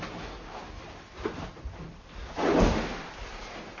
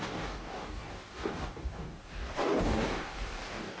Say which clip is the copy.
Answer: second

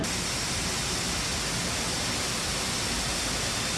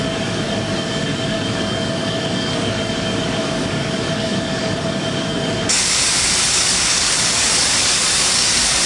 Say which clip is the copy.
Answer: second